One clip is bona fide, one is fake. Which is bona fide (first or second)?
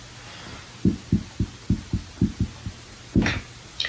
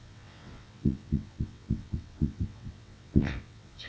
first